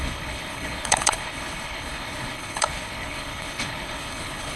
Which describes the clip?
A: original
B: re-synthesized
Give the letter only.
B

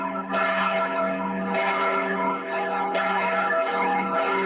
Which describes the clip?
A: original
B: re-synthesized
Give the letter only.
B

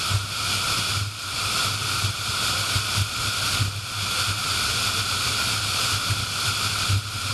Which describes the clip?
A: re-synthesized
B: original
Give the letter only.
B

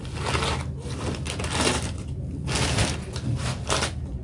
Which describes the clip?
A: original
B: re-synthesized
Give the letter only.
A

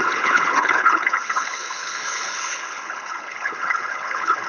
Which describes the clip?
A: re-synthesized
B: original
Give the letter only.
A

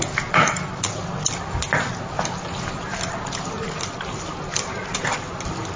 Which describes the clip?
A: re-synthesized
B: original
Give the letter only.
B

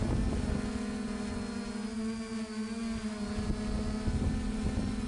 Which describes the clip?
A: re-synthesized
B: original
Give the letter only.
B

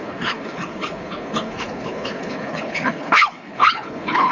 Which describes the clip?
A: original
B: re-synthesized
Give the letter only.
B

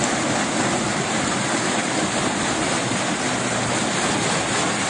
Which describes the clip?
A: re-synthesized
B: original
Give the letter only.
B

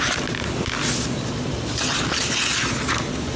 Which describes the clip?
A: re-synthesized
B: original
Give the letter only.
B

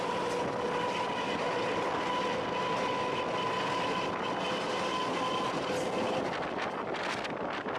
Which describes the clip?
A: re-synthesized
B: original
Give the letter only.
B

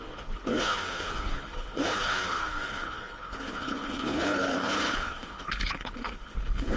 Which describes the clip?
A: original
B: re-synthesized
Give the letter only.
B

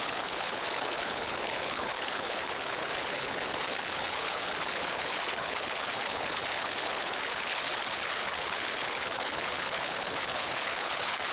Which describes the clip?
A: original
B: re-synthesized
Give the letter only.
B